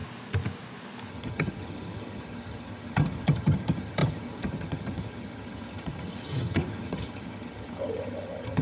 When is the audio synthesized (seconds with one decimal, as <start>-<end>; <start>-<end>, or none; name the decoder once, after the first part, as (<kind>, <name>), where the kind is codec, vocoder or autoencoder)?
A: 1.1-8.6 (vocoder, HiFi-GAN)